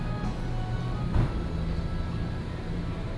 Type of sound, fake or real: real